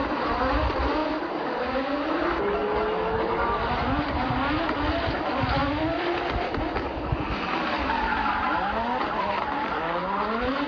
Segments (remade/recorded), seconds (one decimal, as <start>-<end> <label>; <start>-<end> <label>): 0.0-10.7 recorded